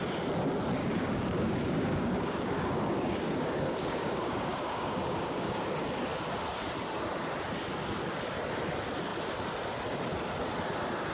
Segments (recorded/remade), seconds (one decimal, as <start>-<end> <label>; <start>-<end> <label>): 0.0-0.8 recorded; 0.8-5.6 remade; 5.6-11.1 recorded